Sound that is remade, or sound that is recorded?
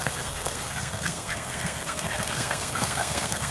remade